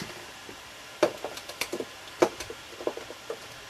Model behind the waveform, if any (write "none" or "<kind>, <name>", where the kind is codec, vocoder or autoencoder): none